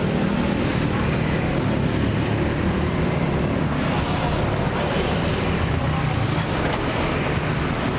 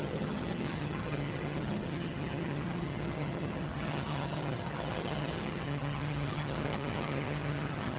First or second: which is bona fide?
first